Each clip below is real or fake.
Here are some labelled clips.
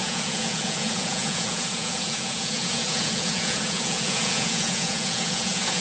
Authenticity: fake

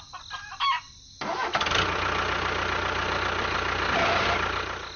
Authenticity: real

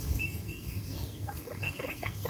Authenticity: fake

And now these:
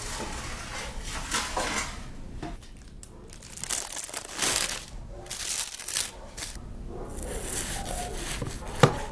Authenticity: real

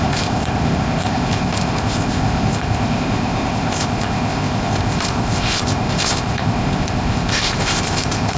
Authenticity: fake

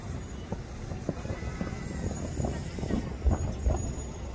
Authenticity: real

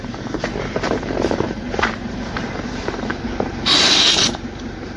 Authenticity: fake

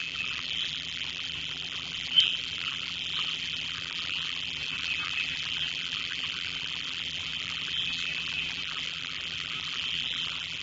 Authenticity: fake